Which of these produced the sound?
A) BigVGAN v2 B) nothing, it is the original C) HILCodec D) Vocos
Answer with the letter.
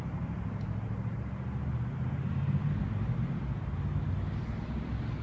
B